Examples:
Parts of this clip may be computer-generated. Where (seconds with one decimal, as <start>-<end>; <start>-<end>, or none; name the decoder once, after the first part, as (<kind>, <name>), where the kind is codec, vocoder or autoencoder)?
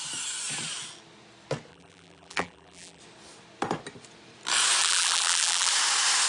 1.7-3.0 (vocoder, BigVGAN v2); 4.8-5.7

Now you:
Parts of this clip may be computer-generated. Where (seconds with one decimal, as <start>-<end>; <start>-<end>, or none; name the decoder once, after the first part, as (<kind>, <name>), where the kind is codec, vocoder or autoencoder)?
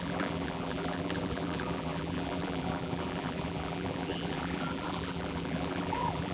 0.0-6.3 (vocoder, BigVGAN v2)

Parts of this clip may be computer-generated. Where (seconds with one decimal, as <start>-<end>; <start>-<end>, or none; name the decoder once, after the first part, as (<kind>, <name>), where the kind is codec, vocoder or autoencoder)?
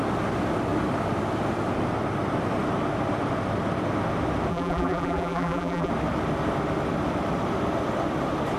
4.5-5.9 (vocoder, BigVGAN v2)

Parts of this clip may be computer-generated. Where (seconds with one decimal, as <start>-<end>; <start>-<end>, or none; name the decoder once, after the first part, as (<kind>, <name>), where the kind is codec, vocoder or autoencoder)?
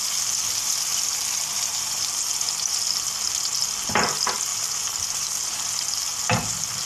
4.5-6.0 (vocoder, BigVGAN v2)